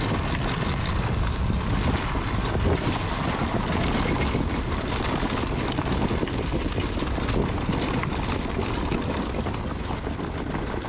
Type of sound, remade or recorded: recorded